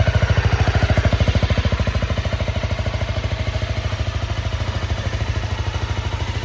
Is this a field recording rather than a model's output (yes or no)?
yes